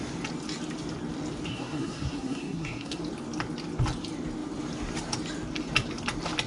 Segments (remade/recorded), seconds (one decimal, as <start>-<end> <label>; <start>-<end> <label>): 0.0-1.5 recorded; 1.5-3.0 remade; 3.0-6.5 recorded